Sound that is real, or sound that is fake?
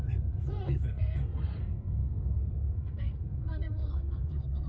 fake